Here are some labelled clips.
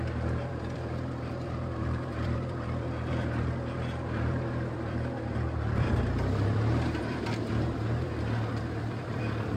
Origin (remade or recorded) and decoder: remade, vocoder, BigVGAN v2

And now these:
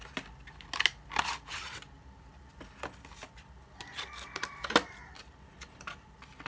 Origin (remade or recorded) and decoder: recorded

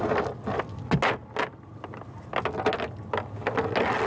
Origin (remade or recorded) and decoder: recorded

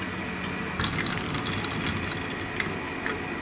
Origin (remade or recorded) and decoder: recorded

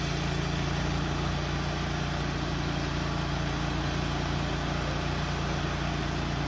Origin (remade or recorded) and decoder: recorded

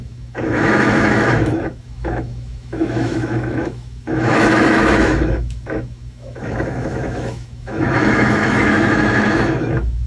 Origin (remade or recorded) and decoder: remade, autoencoder, DAC-VAE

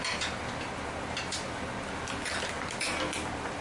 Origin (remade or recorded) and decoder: recorded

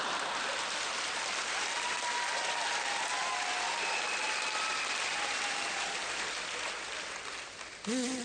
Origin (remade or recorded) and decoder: recorded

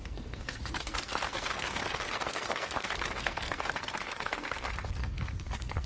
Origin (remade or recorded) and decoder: remade, codec, SNAC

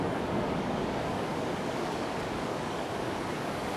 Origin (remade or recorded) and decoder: remade, codec, DAC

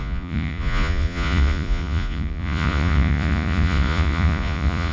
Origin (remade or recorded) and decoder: remade, vocoder, Vocos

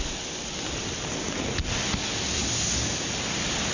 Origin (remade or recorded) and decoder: recorded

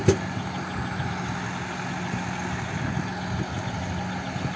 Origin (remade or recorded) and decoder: recorded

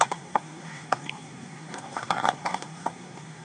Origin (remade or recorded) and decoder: remade, codec, SNAC